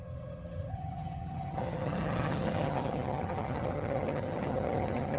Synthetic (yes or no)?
yes